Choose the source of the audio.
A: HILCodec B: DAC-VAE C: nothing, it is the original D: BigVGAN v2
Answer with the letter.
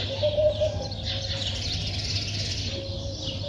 C